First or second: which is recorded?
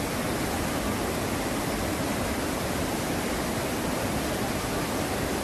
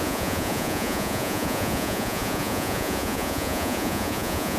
first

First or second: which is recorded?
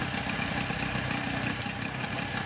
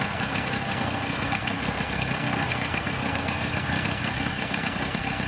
first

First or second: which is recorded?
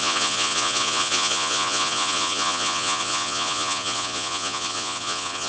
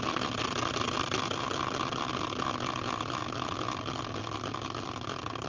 second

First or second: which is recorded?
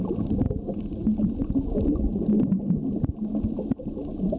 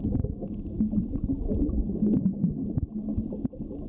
first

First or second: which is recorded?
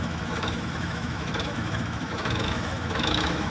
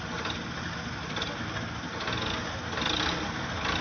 second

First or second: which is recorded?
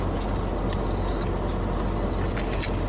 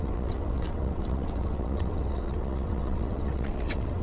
first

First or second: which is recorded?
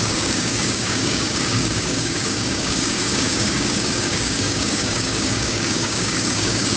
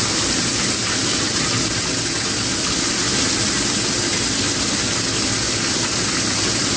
second